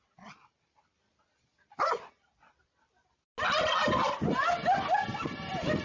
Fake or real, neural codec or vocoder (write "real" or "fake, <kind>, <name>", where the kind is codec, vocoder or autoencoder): real